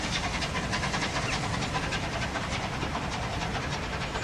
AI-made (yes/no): no